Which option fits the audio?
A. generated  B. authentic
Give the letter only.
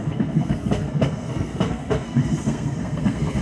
A